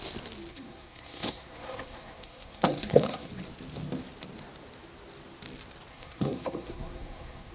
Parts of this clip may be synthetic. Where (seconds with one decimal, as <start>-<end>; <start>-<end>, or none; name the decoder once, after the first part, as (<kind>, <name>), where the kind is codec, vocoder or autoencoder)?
0.5-3.3 (codec, SNAC); 5.9-7.5